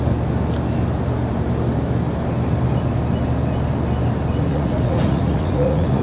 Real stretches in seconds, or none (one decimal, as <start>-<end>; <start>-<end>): 0.0-4.5